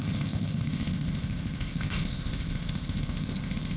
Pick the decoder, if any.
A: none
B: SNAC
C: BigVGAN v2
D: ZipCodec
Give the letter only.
D